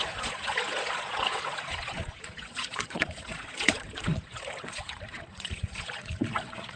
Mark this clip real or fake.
fake